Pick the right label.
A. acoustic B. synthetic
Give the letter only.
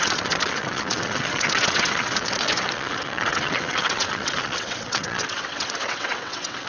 B